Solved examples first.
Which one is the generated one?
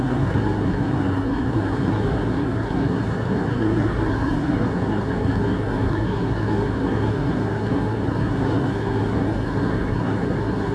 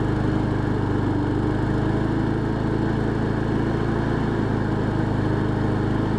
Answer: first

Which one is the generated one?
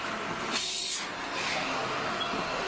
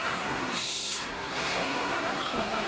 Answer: second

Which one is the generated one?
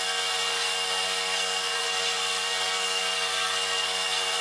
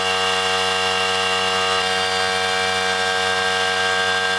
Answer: first